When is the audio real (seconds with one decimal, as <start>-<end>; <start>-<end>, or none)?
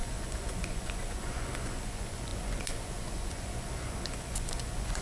none